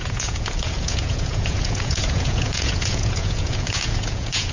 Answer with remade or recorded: remade